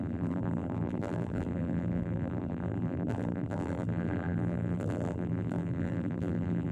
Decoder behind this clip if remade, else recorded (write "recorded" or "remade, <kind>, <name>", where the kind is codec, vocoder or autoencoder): remade, vocoder, BigVGAN v2